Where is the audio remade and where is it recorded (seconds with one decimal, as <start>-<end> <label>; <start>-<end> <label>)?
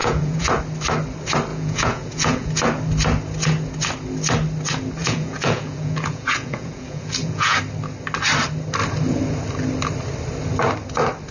0.0-0.6 remade; 0.6-1.5 recorded; 1.5-2.5 remade; 2.5-5.0 recorded; 5.0-7.6 remade; 7.6-11.3 recorded